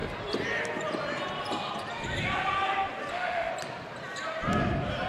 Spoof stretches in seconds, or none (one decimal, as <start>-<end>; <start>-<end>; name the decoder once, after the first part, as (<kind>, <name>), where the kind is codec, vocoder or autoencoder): 3.1-3.5 (autoencoder, DAC-VAE)